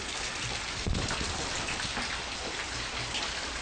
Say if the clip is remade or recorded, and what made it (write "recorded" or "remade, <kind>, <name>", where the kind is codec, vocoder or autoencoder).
recorded